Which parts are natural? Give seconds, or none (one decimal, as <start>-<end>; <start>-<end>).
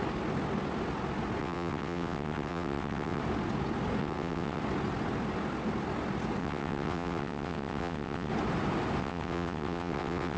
0.0-1.4; 3.2-4.0; 4.6-6.4; 8.3-9.0